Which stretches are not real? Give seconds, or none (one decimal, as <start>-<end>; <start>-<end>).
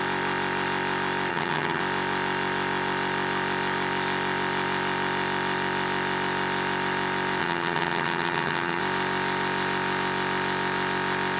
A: 1.3-1.8; 7.4-8.8